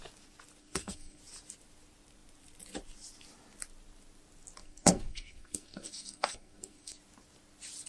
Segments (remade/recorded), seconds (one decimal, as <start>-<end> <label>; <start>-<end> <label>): 0.0-0.6 recorded; 0.6-1.2 remade; 1.2-4.6 recorded; 4.6-7.0 remade; 7.0-7.9 recorded

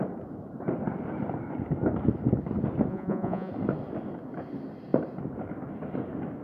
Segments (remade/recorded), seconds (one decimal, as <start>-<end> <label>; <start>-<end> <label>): 0.0-2.9 recorded; 2.9-3.5 remade; 3.5-6.4 recorded

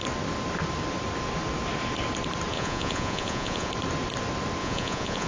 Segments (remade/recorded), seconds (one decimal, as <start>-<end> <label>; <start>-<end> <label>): 0.0-2.5 recorded; 2.5-3.7 remade; 3.7-4.6 recorded; 4.6-5.3 remade

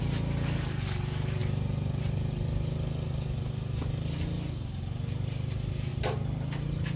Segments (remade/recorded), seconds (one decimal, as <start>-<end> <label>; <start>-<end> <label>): 0.0-7.0 recorded

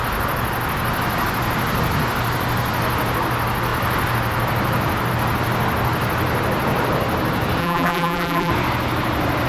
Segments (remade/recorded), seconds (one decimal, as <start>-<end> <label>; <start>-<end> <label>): 0.0-7.6 recorded; 7.6-8.5 remade; 8.5-9.5 recorded

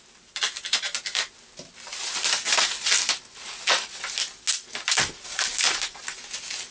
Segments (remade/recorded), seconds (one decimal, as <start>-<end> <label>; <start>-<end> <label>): 0.0-5.5 recorded; 5.5-6.0 remade; 6.0-6.7 recorded